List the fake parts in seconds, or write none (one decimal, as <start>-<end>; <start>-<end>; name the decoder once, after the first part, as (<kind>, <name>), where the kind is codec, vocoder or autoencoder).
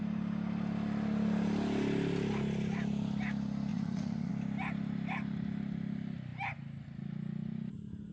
3.7-4.3 (vocoder, Vocos)